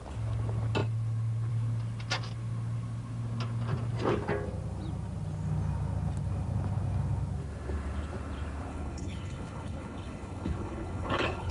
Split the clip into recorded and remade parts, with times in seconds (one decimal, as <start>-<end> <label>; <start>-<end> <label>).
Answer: 0.0-8.7 recorded; 8.7-11.5 remade